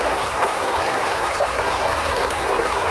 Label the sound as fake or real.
fake